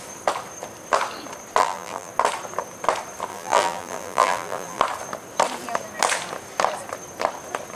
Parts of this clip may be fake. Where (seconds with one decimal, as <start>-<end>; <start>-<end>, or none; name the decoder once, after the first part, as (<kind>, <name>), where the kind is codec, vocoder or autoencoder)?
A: 1.6-2.1 (vocoder, BigVGAN v2); 3.3-4.8